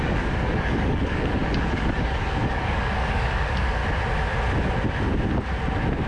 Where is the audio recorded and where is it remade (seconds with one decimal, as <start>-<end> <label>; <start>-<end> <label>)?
0.0-3.8 remade; 3.8-6.1 recorded